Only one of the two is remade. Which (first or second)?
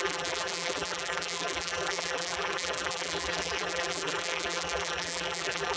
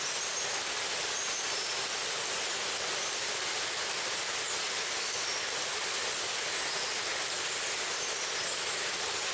first